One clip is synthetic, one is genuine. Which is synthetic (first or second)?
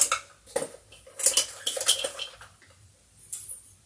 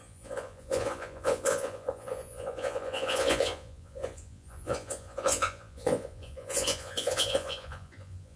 second